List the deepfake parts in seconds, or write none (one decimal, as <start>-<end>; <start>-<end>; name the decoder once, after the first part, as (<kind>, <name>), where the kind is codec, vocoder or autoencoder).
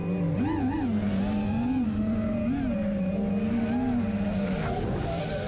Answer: none